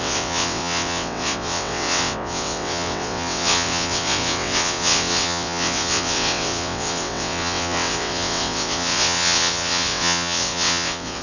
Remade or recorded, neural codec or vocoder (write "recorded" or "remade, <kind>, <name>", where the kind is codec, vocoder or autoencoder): remade, vocoder, WaveNeXt